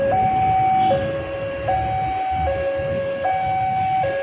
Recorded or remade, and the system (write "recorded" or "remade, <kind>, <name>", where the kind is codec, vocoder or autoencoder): recorded